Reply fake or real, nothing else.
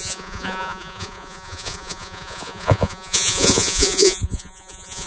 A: fake